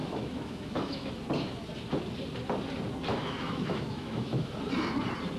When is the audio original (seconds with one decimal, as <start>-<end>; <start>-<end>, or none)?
1.1-3.1; 4.5-5.4